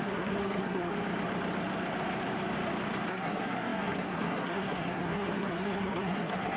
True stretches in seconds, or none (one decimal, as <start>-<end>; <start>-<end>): 0.9-3.1